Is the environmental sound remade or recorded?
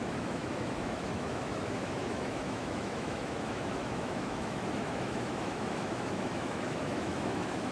remade